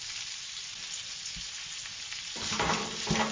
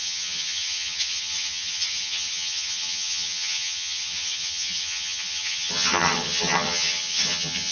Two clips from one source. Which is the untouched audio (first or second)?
first